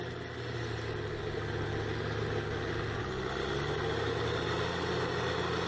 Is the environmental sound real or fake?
real